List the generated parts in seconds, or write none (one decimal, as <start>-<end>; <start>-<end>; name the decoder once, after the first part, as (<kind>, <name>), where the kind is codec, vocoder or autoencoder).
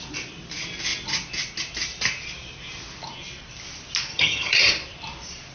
4.1-4.7 (vocoder, HiFi-GAN)